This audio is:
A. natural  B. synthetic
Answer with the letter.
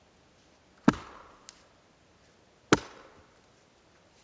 A